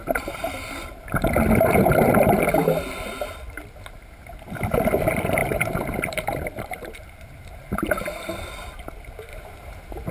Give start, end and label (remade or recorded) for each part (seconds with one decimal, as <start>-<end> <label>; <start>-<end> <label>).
0.0-5.4 recorded; 5.4-7.6 remade; 7.6-9.3 recorded; 9.3-10.1 remade